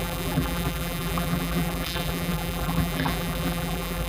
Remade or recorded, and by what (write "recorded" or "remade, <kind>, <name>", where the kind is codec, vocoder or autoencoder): remade, vocoder, BigVGAN v2